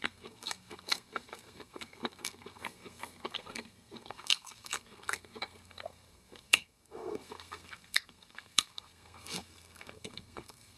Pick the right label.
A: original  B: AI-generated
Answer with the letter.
B